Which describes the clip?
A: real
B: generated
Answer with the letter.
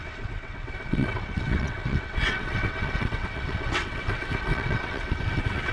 B